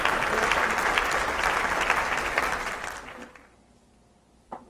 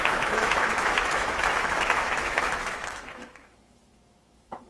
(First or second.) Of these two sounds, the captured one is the first